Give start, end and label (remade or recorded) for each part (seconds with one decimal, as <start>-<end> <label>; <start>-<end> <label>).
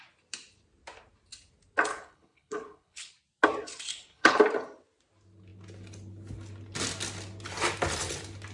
0.0-1.9 recorded; 1.9-3.1 remade; 3.1-3.9 recorded; 3.9-4.4 remade; 4.4-8.5 recorded